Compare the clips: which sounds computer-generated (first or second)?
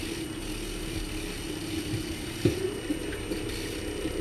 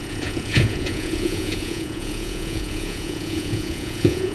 second